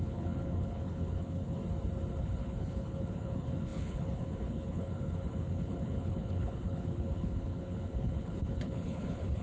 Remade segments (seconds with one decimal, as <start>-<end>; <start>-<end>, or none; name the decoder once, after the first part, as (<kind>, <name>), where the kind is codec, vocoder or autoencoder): 0.0-1.6 (codec, HILCodec); 2.2-9.4

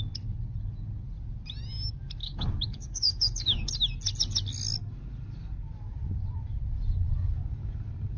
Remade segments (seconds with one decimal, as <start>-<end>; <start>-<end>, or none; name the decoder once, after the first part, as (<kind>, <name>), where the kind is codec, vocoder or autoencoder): 2.2-3.7 (codec, DAC)

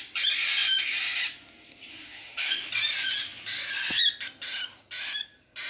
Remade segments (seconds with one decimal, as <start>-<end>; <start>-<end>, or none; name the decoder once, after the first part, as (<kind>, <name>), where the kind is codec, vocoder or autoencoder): 1.9-2.7 (autoencoder, DAC-VAE)

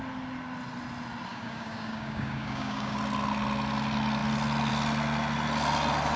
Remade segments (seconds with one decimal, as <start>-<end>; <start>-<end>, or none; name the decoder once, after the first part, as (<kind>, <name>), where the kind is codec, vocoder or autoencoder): 1.3-3.0 (codec, DAC)

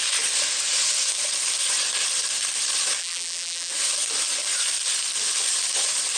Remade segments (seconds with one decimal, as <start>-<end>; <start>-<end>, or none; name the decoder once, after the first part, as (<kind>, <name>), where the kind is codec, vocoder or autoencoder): 3.0-3.7 (vocoder, BigVGAN v2)